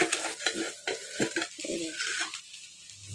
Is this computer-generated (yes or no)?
no